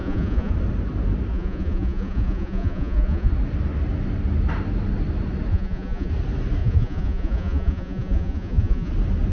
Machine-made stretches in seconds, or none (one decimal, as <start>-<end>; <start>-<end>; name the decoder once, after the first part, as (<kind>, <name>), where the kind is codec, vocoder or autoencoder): 0.0-0.5 (vocoder, Vocos); 1.3-3.3; 5.5-6.1; 6.6-8.9